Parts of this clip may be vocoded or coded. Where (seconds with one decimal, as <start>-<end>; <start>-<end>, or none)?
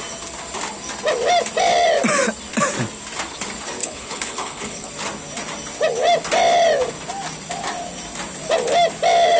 3.8-4.9